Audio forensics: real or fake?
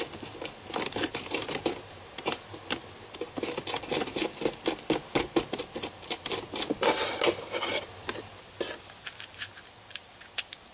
real